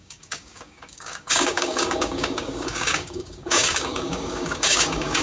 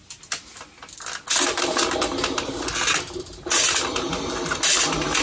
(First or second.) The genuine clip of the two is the second